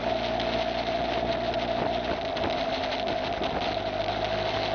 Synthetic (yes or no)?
no